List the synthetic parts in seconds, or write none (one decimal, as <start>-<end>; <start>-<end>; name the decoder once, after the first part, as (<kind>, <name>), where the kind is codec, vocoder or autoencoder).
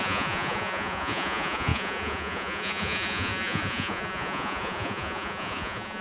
0.0-6.0 (vocoder, Vocos)